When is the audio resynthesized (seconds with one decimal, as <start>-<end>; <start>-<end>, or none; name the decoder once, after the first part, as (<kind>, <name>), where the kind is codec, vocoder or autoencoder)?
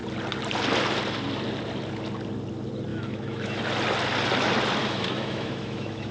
2.9-3.6 (autoencoder, DAC-VAE); 4.8-6.1